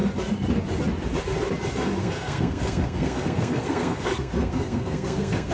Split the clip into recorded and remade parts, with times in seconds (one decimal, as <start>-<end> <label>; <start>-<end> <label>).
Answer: 0.0-2.0 recorded; 2.0-5.5 remade